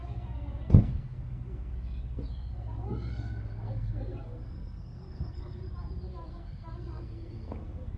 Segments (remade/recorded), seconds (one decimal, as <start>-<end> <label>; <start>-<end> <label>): 0.0-5.6 remade; 5.6-6.3 recorded; 6.3-8.0 remade

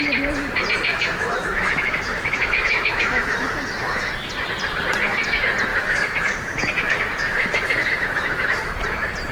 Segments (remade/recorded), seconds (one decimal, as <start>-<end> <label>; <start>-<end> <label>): 0.0-0.9 recorded; 0.9-4.1 remade; 4.1-5.7 recorded; 5.7-8.8 remade; 8.8-9.3 recorded

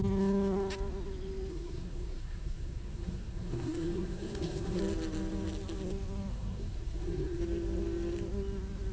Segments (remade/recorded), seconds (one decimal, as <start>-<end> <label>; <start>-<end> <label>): 0.0-1.5 recorded; 1.5-4.8 remade; 4.8-6.3 recorded; 6.3-7.4 remade; 7.4-8.9 recorded

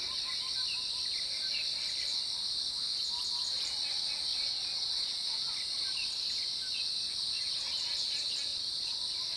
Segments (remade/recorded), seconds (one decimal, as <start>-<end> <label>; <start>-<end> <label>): 0.0-4.3 recorded; 4.3-5.5 remade; 5.5-8.5 recorded; 8.5-9.0 remade; 9.0-9.4 recorded

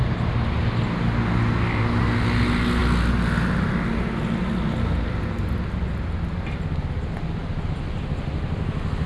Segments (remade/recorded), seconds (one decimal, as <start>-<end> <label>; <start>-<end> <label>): 0.0-9.1 recorded